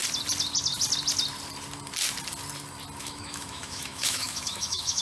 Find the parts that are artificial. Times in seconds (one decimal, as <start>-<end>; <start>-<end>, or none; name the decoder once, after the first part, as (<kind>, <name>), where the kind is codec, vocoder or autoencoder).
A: 3.0-5.0 (autoencoder, DAC-VAE)